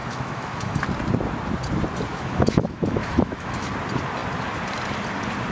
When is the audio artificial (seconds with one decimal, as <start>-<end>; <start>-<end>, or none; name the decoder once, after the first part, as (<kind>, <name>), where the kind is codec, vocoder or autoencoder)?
0.0-0.8 (autoencoder, DAC-VAE); 2.1-3.7